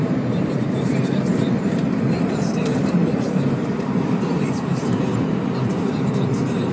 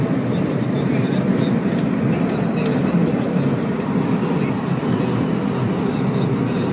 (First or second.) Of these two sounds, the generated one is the first